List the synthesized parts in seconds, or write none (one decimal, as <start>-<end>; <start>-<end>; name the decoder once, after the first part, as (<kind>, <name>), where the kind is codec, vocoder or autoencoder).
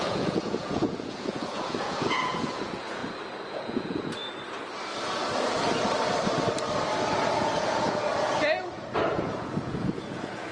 0.0-3.0 (vocoder, Vocos); 3.5-4.2; 7.0-8.1; 9.1-10.5